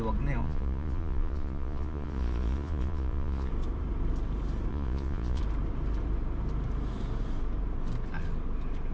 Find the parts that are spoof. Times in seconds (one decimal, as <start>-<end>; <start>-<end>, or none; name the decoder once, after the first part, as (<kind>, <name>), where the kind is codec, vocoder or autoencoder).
0.4-3.5 (vocoder, Vocos); 4.7-5.4